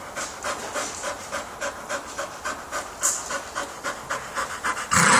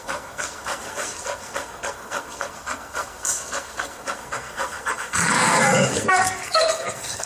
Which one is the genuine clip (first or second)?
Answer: first